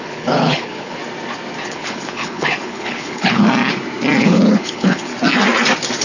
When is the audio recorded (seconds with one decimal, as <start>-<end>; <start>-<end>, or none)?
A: 1.0-1.6; 3.5-4.2; 5.1-6.0

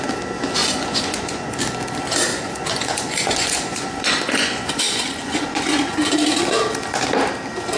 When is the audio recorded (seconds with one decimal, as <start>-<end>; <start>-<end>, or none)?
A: 0.0-0.6; 1.6-2.3; 6.1-7.8

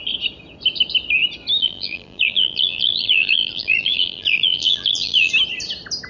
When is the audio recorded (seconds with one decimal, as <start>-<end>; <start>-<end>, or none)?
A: 0.0-1.6; 5.3-6.1

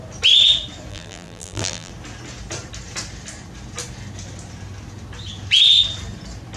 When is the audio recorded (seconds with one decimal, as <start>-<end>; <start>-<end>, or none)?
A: 0.0-0.9; 1.9-6.6

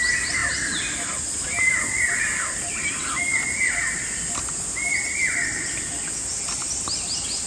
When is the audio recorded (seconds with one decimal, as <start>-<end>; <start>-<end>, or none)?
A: 0.0-7.5

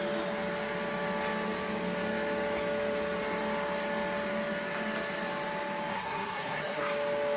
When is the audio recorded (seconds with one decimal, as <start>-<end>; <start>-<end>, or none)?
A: 0.0-5.9; 6.8-7.4